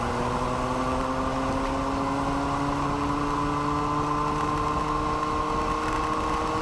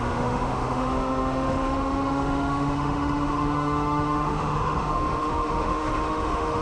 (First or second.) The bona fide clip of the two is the first